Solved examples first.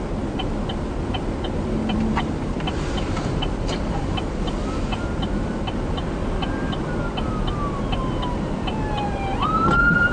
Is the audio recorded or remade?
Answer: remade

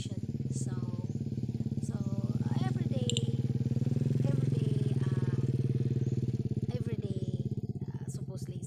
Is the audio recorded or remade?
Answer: recorded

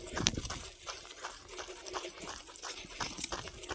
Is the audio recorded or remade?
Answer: recorded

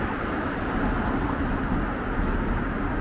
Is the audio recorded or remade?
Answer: recorded